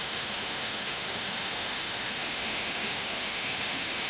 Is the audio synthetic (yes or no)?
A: yes